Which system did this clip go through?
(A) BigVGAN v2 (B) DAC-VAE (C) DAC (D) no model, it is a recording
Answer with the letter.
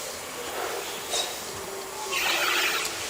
D